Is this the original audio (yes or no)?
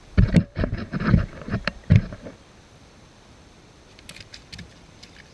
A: no